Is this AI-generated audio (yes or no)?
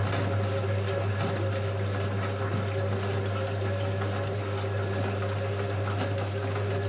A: no